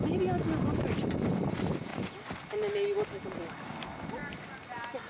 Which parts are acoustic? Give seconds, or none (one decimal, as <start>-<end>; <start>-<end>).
0.0-5.1